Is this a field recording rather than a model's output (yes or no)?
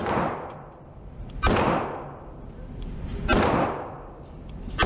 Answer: no